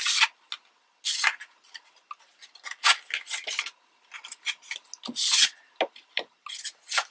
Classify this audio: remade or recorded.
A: recorded